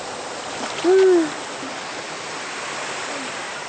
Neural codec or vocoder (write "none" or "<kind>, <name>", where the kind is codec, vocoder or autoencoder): none